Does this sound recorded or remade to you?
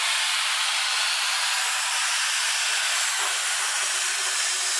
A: recorded